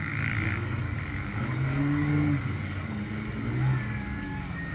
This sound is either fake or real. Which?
fake